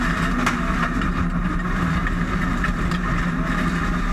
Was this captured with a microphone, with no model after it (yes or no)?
yes